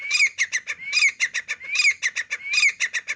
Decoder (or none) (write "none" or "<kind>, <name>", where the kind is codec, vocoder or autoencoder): none